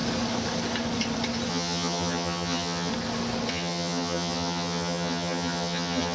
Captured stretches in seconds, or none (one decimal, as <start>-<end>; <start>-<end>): 0.0-1.5; 2.9-3.5